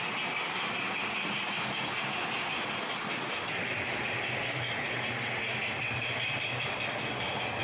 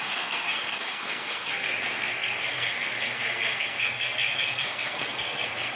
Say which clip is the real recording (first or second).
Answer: first